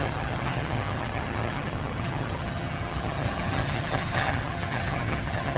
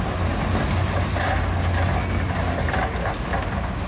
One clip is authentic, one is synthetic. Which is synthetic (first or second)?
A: first